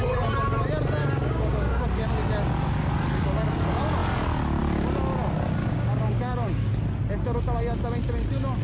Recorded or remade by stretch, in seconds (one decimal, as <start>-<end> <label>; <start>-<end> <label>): 0.0-1.0 recorded; 1.0-2.0 remade; 2.0-5.6 recorded; 5.6-6.7 remade; 6.7-8.6 recorded